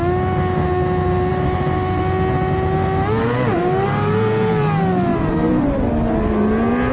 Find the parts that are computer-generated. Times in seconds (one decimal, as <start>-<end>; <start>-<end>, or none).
1.3-2.0; 3.2-4.5; 5.1-5.9